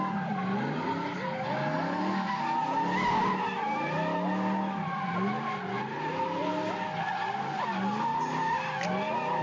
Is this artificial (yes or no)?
no